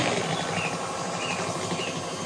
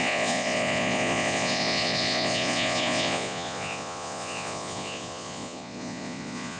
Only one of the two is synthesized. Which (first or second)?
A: second